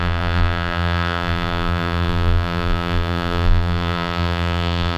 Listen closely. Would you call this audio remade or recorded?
remade